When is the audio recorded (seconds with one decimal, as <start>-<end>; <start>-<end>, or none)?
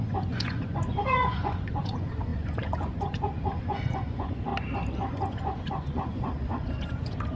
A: 4.5-5.1